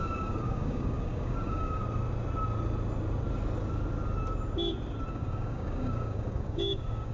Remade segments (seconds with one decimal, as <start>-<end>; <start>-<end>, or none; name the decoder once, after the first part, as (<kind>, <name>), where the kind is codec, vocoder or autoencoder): 0.0-1.8 (codec, DAC); 5.1-7.1